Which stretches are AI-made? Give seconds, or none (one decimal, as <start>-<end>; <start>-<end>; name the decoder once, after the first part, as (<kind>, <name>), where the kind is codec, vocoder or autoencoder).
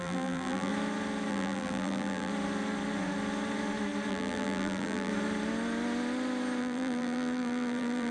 0.0-0.7 (vocoder, BigVGAN v2); 1.3-2.3; 4.1-5.1; 6.6-8.1